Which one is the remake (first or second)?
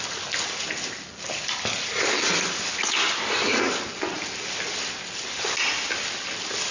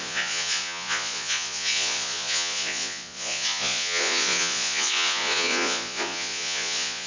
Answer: second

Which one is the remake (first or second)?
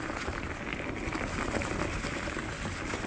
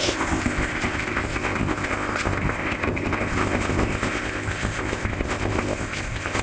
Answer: second